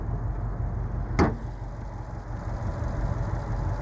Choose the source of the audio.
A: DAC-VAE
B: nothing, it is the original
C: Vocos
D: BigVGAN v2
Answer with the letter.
B